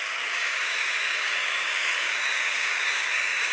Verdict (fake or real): fake